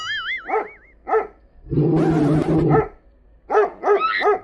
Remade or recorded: recorded